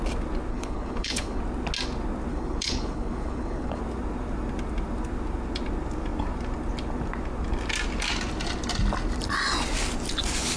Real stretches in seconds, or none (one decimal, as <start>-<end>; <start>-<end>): 0.0-0.5; 1.4-2.3; 3.8-10.6